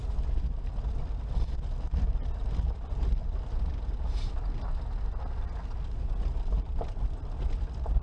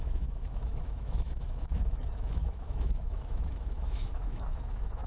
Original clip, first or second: first